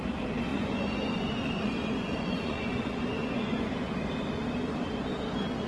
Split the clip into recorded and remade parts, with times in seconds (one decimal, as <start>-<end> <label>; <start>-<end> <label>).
0.0-0.5 recorded; 0.5-3.9 remade; 3.9-5.7 recorded